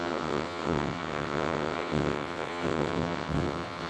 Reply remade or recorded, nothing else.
remade